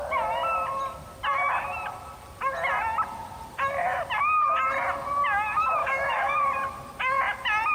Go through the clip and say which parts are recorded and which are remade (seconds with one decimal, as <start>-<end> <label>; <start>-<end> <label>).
0.0-5.8 recorded; 5.8-6.4 remade; 6.4-7.7 recorded